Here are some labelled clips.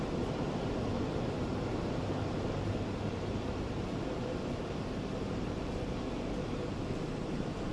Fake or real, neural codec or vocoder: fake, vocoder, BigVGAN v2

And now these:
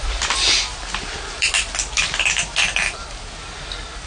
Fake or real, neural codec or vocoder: real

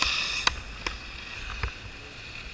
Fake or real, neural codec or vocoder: real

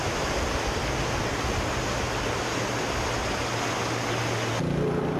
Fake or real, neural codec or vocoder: real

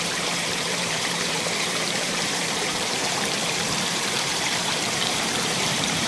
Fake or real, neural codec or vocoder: fake, vocoder, BigVGAN v2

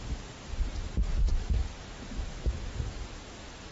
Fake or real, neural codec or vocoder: real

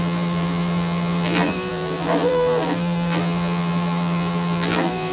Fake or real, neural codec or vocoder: fake, vocoder, BigVGAN v2